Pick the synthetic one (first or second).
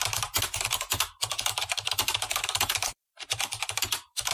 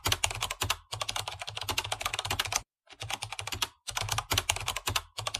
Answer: first